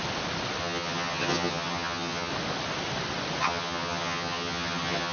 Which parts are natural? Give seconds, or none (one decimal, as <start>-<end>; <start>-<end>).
0.0-0.6; 2.3-3.4